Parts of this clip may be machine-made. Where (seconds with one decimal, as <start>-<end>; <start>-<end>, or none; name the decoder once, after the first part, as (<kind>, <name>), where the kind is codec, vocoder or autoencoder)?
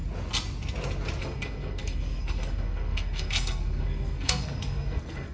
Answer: 1.2-5.3 (codec, SNAC)